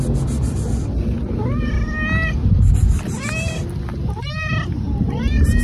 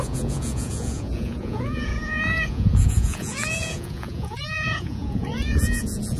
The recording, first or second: first